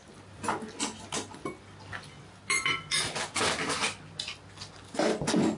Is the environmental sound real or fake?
real